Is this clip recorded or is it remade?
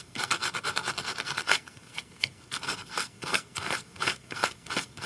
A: remade